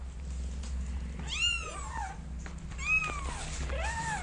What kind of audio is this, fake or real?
real